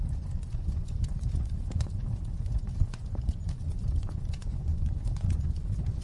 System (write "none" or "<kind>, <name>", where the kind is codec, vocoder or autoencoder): vocoder, Vocos